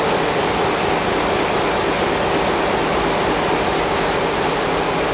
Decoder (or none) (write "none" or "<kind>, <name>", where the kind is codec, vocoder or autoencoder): none